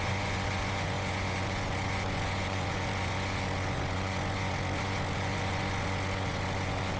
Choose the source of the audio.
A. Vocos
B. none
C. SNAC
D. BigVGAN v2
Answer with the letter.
A